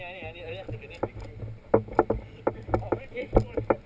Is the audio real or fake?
real